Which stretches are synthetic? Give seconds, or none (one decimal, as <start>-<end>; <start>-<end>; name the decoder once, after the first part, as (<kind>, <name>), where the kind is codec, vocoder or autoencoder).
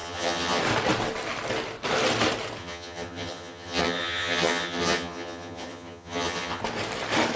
0.0-0.6 (vocoder, HiFi-GAN); 2.6-6.6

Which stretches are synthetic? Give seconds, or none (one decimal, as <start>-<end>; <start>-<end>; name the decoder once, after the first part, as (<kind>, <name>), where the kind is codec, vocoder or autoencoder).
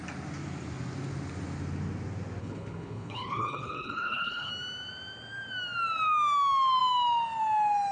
2.4-4.5 (codec, HILCodec)